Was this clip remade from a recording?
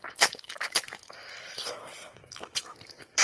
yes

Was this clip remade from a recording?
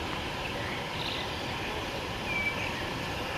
no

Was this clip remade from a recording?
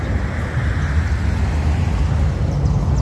no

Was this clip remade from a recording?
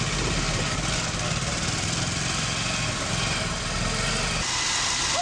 no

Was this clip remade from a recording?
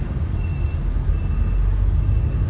no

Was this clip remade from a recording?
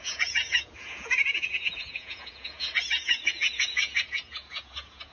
yes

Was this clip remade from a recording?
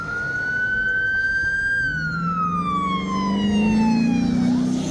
no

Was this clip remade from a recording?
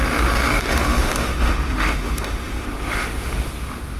yes